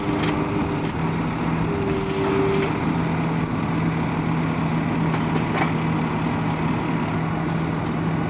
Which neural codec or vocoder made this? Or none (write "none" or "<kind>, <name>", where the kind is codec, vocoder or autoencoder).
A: none